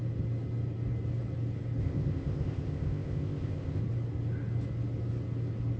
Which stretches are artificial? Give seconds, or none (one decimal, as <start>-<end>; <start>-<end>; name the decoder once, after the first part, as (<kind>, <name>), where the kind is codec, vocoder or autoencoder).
1.8-3.8 (codec, ZipCodec)